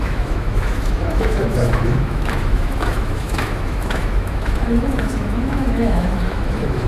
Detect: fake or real fake